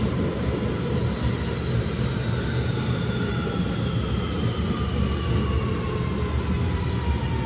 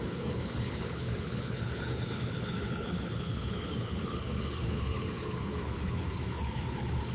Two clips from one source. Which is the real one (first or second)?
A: first